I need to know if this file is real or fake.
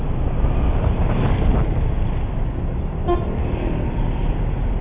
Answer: real